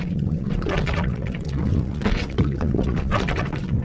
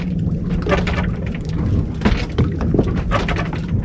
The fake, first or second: first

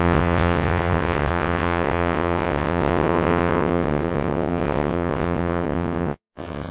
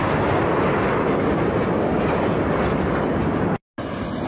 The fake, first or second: first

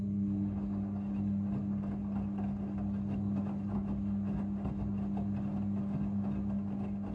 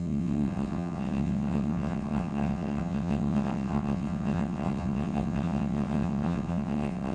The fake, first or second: second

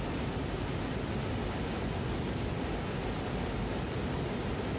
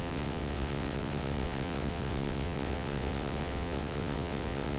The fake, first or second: second